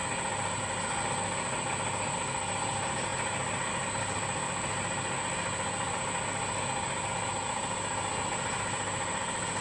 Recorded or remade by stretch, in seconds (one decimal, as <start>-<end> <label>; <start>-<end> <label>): 0.0-9.6 recorded